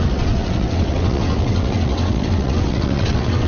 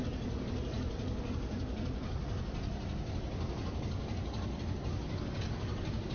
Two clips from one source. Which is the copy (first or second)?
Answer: first